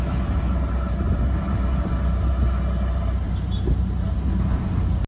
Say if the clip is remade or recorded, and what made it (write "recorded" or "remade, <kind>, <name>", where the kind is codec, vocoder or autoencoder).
recorded